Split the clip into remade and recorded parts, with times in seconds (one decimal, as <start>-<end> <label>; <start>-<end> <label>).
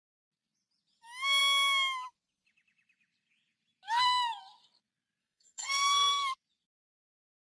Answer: 0.0-5.2 recorded; 5.2-6.1 remade; 6.1-7.4 recorded